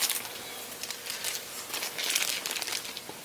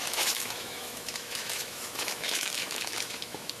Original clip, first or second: first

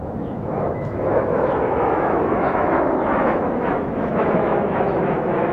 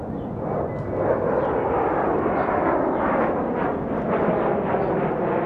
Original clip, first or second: second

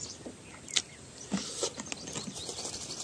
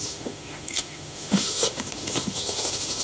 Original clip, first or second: first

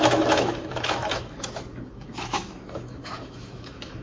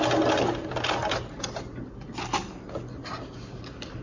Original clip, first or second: second